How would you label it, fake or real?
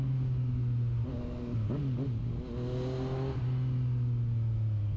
real